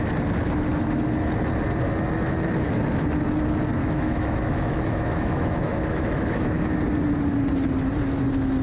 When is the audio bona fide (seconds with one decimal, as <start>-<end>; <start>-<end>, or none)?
0.0-3.8; 6.7-8.6

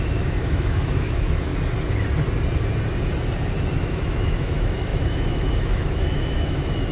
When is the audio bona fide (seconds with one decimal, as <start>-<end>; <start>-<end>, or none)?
1.5-3.8

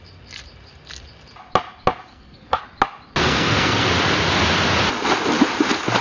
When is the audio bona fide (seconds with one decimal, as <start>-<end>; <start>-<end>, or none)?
0.0-2.1; 2.6-3.2; 3.9-6.0

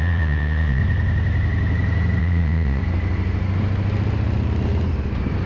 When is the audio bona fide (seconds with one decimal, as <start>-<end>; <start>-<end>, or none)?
0.8-2.2; 2.8-5.5

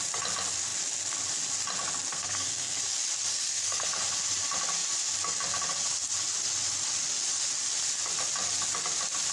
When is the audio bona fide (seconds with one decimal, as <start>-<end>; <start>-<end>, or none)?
0.0-2.1; 2.8-3.3; 4.0-9.3

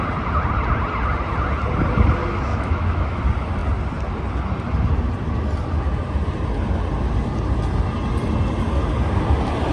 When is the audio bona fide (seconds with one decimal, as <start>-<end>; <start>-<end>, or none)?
0.0-2.5; 3.2-9.7

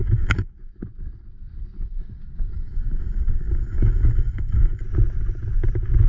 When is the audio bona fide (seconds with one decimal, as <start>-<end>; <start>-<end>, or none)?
0.5-2.5; 4.8-6.1

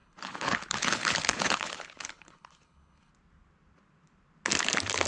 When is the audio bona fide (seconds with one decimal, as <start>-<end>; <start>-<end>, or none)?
3.1-5.1